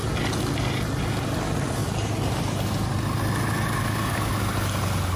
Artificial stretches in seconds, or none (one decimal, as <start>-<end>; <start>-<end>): none